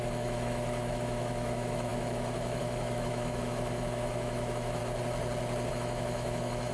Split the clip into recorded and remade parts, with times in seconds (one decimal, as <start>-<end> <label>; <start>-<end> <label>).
0.0-4.8 remade; 4.8-5.7 recorded; 5.7-6.7 remade